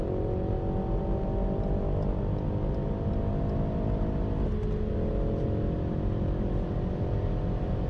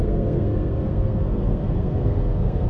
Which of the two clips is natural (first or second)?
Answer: first